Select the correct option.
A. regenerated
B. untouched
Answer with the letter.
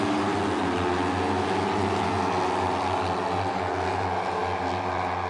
B